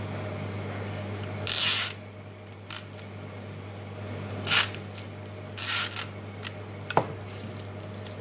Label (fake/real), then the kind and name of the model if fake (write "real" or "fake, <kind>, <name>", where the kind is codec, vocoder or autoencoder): real